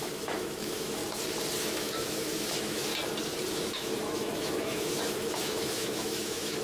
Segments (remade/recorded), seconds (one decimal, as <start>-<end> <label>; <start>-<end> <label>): 0.0-1.0 remade; 1.0-1.7 recorded; 1.7-2.9 remade; 2.9-3.5 recorded; 3.5-6.6 remade